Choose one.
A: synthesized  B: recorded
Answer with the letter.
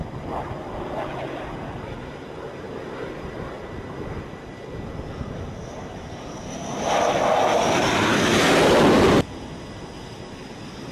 B